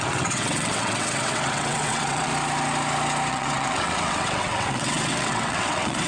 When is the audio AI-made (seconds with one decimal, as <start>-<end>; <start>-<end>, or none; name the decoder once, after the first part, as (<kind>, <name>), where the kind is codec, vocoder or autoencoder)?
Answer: 0.0-2.3 (vocoder, WaveNeXt); 3.3-6.1